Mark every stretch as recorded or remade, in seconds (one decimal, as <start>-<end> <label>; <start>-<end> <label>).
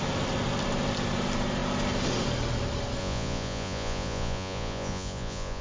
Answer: 0.0-3.0 recorded; 3.0-5.6 remade